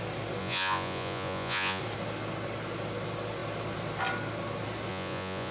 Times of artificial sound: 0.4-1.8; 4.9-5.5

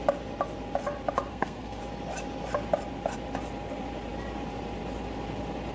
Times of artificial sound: 1.3-1.8

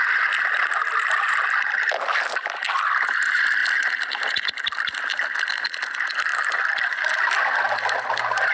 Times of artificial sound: none

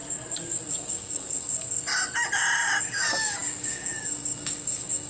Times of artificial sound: 0.7-1.9; 2.8-5.1

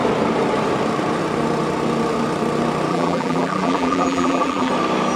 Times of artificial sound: 2.9-4.7

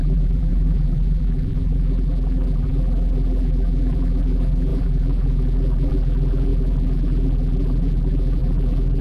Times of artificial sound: 0.0-9.0

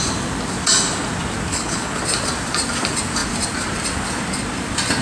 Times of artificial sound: 1.5-2.0